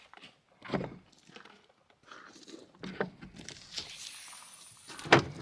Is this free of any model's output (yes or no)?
yes